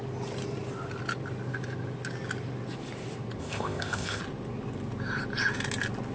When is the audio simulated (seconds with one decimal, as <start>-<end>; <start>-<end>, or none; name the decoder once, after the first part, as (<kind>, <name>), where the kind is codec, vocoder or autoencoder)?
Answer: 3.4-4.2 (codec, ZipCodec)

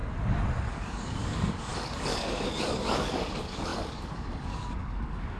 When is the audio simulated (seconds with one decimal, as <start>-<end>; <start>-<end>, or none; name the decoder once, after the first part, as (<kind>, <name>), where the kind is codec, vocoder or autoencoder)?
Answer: 0.7-5.4 (codec, DAC)

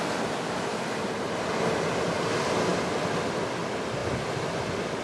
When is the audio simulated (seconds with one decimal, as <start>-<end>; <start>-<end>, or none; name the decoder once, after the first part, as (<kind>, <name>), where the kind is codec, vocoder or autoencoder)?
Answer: none

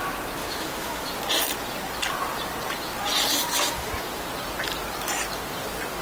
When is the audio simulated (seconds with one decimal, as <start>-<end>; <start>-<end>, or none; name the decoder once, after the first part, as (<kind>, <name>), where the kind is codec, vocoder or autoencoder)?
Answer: 0.4-1.1 (autoencoder, DAC-VAE); 3.3-3.9

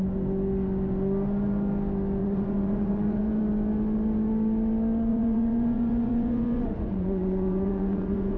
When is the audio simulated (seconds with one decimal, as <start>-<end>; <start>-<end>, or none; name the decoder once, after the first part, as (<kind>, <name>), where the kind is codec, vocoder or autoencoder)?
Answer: 2.2-3.4 (vocoder, Vocos); 5.1-8.4